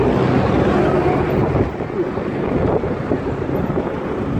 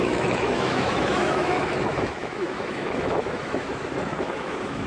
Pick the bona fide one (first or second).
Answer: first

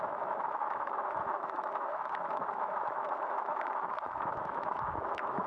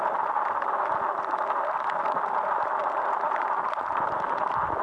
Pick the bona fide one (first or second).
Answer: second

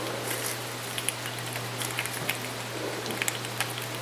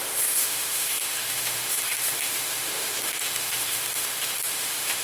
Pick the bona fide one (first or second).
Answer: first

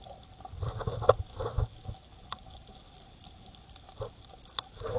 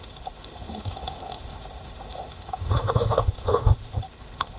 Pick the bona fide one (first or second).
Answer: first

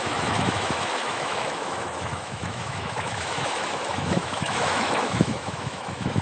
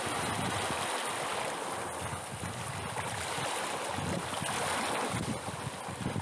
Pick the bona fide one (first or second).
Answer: second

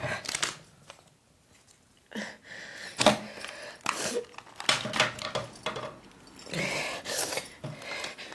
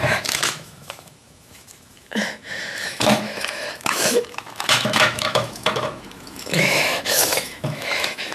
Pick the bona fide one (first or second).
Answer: first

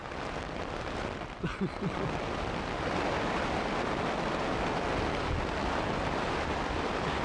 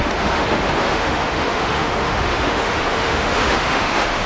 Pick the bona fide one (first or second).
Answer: first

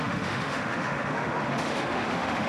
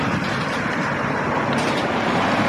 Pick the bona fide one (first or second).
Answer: second